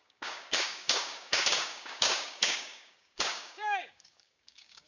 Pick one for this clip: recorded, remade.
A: remade